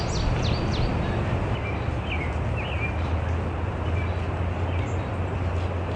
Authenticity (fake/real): real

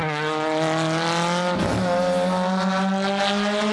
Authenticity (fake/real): real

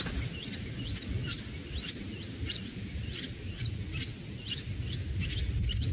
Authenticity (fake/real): real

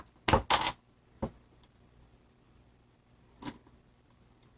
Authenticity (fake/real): real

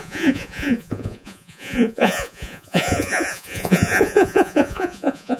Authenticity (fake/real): fake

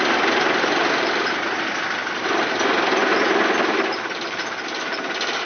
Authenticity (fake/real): real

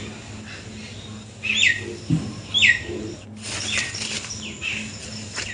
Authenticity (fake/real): real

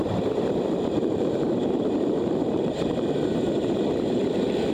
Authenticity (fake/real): fake